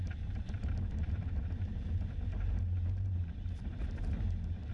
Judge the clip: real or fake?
fake